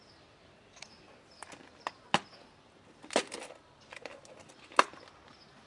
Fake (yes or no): no